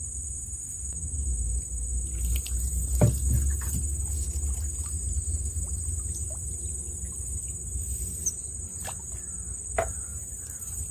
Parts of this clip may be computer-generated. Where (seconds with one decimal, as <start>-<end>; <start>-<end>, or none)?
8.4-9.1; 10.1-10.9